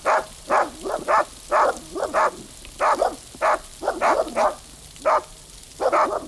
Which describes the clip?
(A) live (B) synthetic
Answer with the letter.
A